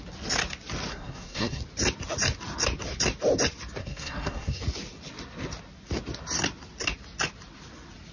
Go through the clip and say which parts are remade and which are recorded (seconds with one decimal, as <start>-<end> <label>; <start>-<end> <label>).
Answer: 0.0-0.9 recorded; 0.9-1.6 remade; 1.6-3.8 recorded; 3.8-4.6 remade; 4.6-8.1 recorded

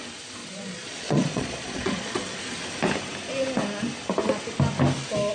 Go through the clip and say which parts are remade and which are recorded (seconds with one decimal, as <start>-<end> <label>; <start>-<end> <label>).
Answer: 0.0-0.4 recorded; 0.4-2.4 remade; 2.4-5.3 recorded

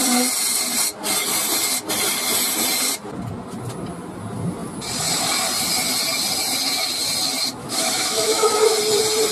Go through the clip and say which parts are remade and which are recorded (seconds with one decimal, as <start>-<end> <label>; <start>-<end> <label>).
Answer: 0.0-7.6 recorded; 7.6-8.8 remade; 8.8-9.3 recorded

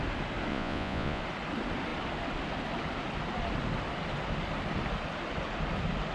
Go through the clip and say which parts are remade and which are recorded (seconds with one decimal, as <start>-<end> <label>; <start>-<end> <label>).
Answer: 0.0-0.5 recorded; 0.5-1.2 remade; 1.2-6.1 recorded